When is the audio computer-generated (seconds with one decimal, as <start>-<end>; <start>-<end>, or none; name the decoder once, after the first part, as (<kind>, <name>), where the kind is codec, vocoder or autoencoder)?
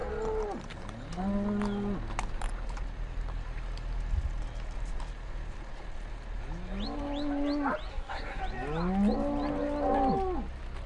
7.9-8.4 (codec, SNAC)